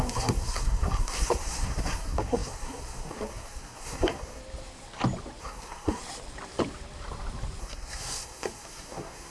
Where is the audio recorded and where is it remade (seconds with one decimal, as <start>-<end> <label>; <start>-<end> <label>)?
0.0-4.4 remade; 4.4-5.4 recorded; 5.4-6.0 remade; 6.0-7.6 recorded; 7.6-9.3 remade